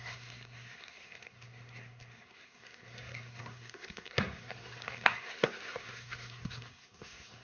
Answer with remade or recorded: remade